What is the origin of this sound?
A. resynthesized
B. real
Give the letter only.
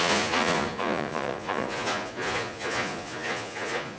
A